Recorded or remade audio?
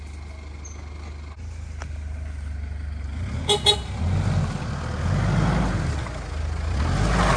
recorded